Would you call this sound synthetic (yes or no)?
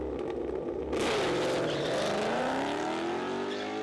no